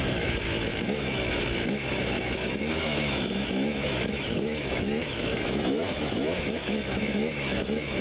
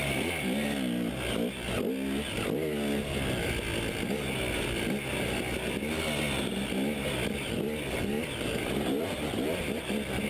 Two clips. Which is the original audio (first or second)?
second